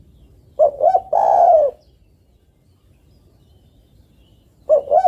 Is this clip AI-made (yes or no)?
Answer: no